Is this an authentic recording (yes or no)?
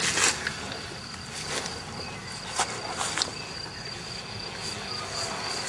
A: yes